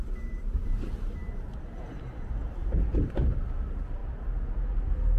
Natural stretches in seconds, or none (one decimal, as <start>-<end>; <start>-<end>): 4.0-4.6